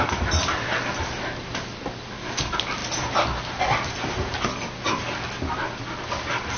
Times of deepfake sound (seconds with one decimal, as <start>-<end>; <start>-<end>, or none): none